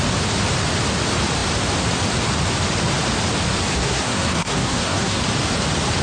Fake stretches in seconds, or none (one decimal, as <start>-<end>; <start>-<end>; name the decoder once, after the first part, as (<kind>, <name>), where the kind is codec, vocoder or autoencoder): 3.7-5.2 (codec, SNAC)